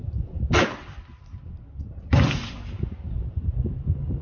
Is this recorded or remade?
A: recorded